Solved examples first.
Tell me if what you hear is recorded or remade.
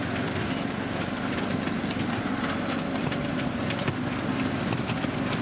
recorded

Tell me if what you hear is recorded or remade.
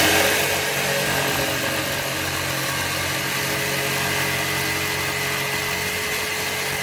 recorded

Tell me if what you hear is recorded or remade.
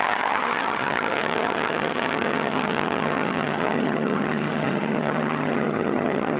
remade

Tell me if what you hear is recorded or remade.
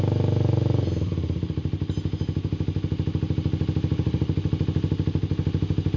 recorded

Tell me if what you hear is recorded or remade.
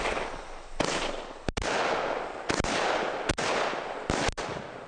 recorded